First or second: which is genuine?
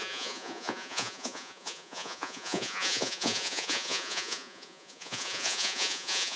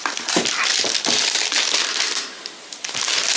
second